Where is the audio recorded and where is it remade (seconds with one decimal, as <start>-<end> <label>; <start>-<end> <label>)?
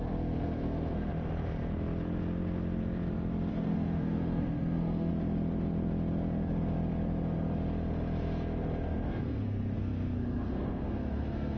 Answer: 0.0-1.1 remade; 1.1-3.5 recorded; 3.5-5.1 remade; 5.1-9.2 recorded; 9.2-11.6 remade